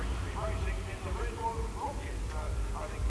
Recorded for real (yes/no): yes